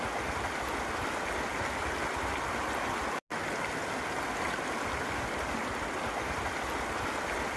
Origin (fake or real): real